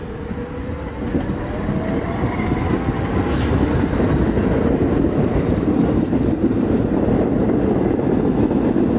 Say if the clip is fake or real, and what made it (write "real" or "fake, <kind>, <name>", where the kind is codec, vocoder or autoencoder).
real